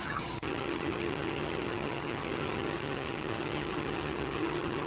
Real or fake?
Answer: fake